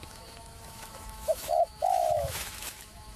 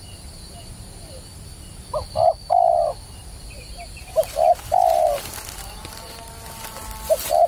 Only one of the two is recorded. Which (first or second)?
second